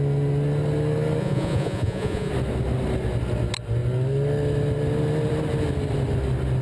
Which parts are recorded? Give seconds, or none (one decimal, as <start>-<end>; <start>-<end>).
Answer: 0.0-1.2; 2.3-6.6